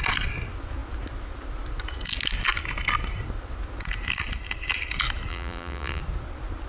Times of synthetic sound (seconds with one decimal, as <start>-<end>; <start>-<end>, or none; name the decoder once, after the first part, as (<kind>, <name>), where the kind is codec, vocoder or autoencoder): 5.3-6.0 (vocoder, BigVGAN v2)